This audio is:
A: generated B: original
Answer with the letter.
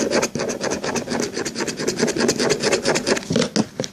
B